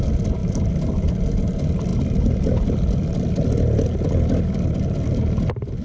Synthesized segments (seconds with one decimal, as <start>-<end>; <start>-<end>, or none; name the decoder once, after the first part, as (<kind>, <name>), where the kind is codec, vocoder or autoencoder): none